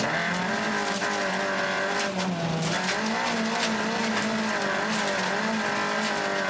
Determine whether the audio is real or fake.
real